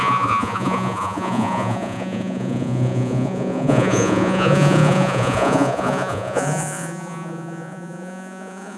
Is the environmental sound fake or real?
fake